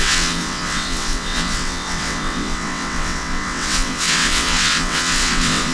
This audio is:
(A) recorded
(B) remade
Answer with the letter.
B